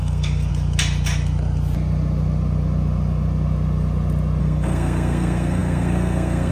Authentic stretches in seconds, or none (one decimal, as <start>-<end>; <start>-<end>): 0.5-4.4